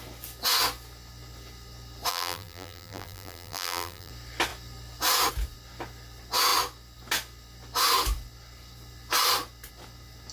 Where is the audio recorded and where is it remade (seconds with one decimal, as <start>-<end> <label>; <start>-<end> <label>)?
0.0-2.1 recorded; 2.1-4.1 remade; 4.1-10.3 recorded